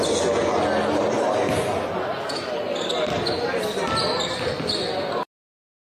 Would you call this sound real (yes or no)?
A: yes